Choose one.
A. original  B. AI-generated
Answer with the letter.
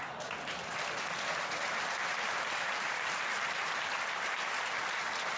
B